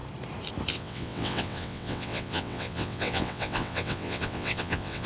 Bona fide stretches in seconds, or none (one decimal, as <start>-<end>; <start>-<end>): 0.0-0.7